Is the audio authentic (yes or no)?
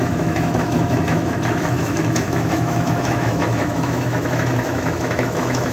no